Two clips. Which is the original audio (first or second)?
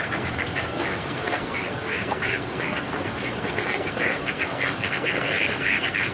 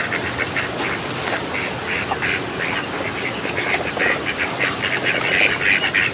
second